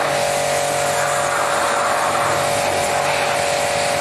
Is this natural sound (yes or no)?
yes